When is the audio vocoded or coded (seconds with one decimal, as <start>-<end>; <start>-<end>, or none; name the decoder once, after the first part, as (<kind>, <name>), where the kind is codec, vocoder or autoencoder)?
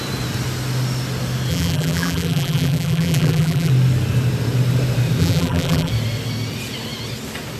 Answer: 1.5-3.7 (vocoder, BigVGAN v2); 5.2-5.9